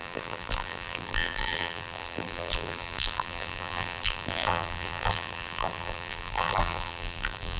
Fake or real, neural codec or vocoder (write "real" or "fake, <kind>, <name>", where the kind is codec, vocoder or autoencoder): fake, vocoder, BigVGAN v2